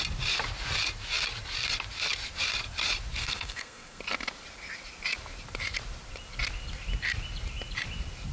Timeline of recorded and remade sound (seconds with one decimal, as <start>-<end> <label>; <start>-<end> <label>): 0.0-3.2 recorded; 3.2-4.0 remade; 4.0-8.3 recorded